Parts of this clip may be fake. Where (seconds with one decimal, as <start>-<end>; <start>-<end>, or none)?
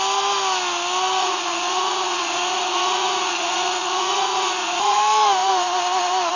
1.2-5.0